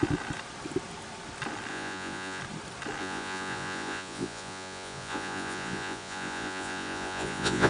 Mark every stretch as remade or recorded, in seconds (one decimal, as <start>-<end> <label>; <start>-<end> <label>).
0.0-1.7 recorded; 1.7-2.4 remade; 2.4-3.0 recorded; 3.0-7.7 remade